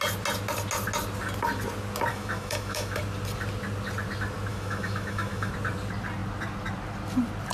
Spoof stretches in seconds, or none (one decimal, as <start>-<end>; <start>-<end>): 2.1-3.0; 4.5-5.5